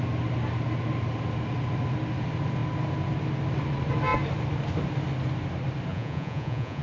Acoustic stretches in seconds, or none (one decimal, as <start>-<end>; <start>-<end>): 0.0-5.9